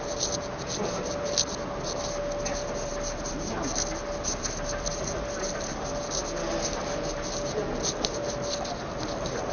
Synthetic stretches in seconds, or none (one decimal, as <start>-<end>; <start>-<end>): none